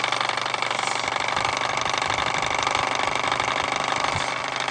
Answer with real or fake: real